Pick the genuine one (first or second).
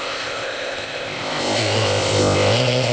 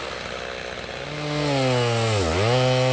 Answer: second